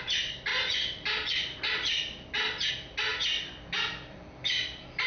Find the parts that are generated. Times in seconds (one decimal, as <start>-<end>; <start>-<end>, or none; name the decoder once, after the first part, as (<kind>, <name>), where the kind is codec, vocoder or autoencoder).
none